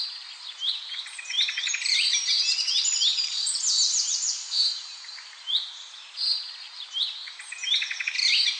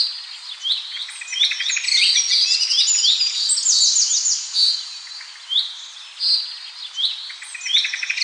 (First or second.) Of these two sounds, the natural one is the second